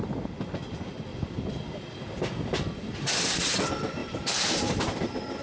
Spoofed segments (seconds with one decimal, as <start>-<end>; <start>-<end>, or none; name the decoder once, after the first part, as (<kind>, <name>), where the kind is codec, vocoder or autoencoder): 1.1-3.4 (vocoder, BigVGAN v2); 4.0-4.5